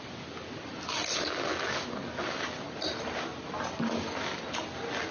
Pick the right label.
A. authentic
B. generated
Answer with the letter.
A